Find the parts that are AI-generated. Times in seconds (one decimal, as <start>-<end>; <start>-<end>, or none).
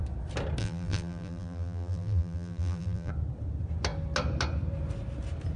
0.6-3.1